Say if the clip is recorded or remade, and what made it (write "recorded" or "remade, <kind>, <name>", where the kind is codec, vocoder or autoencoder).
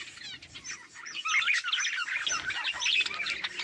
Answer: recorded